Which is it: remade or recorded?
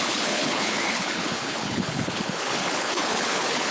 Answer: remade